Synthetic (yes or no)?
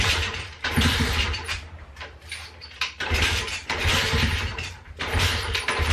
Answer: yes